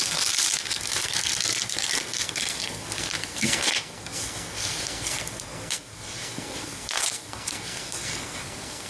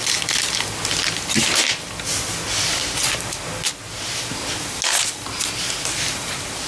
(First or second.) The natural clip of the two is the second